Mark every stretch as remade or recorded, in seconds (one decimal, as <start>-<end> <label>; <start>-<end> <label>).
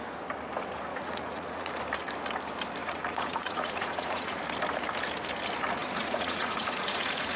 0.0-0.9 recorded; 0.9-1.7 remade; 1.7-2.8 recorded; 2.8-4.4 remade; 4.4-5.8 recorded; 5.8-7.4 remade